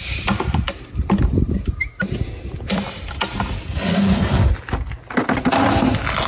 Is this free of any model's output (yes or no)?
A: yes